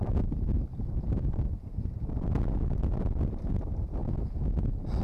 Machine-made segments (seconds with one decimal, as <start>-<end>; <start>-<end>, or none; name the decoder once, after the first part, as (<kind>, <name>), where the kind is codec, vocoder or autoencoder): none